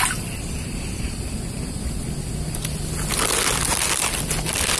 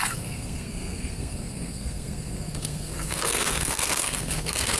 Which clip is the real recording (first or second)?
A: first